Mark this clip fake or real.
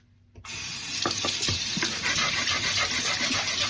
real